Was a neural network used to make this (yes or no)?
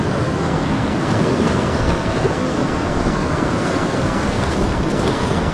yes